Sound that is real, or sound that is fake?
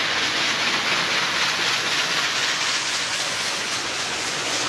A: fake